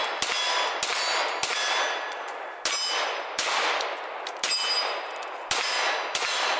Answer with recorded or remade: recorded